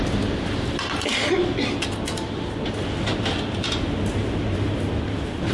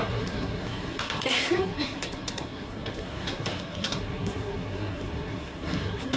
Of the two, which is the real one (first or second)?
first